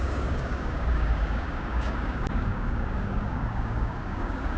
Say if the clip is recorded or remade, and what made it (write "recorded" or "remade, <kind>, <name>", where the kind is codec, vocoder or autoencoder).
remade, codec, DAC